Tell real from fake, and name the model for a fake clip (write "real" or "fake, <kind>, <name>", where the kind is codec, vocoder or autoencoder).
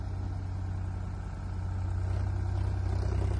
real